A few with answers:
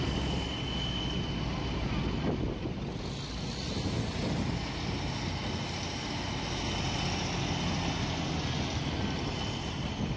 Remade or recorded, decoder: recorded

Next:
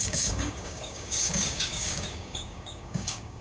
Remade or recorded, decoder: remade, codec, DAC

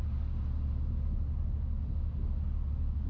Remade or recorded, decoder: recorded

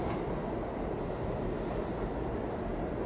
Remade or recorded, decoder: recorded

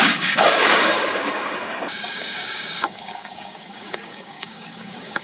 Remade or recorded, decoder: remade, codec, DAC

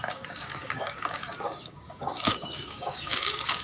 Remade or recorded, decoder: remade, codec, DAC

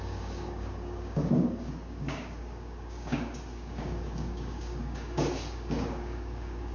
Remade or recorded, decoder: remade, codec, DAC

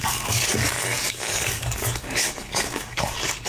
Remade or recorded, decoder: remade, codec, DAC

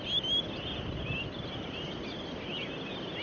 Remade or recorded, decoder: recorded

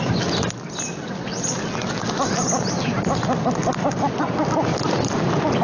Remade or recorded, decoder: recorded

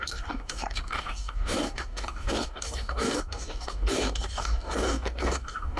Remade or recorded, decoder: remade, codec, DAC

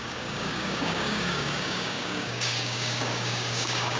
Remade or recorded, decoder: remade, codec, DAC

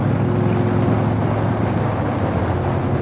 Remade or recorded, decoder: recorded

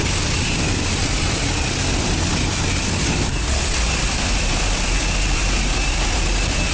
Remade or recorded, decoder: recorded